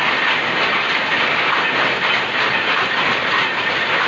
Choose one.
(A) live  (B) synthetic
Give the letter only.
A